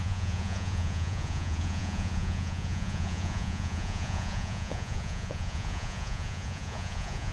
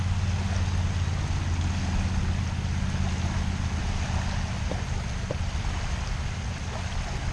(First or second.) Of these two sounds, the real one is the second